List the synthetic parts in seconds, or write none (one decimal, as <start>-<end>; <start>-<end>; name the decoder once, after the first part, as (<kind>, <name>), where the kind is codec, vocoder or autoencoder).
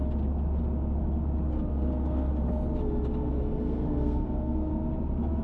1.7-2.3 (codec, SNAC); 3.3-4.7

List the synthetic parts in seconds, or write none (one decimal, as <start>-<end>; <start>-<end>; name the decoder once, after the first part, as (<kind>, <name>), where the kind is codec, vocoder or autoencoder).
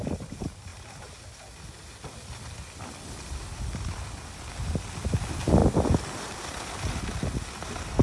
none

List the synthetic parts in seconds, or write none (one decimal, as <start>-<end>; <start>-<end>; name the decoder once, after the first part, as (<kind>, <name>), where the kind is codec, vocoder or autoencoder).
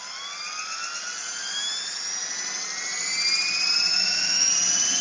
3.9-4.5 (autoencoder, DAC-VAE)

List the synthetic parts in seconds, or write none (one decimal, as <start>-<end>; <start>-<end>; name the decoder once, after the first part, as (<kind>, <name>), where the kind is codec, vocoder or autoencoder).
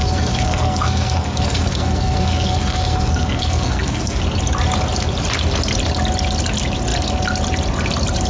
0.0-4.2 (codec, SNAC)